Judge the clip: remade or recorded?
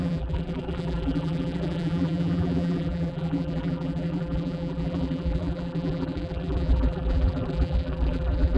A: remade